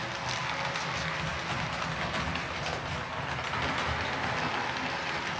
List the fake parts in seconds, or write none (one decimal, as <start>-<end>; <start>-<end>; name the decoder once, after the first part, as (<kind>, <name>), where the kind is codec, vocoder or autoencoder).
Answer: none

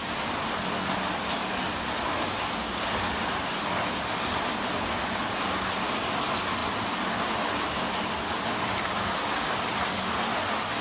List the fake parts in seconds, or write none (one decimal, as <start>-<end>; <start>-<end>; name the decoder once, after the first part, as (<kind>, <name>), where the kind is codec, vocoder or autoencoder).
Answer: none

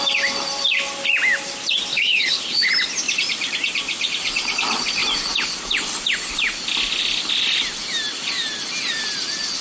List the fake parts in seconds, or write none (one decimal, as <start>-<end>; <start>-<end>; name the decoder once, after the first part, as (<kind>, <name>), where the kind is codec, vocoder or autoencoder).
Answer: 1.9-2.7 (codec, HILCodec)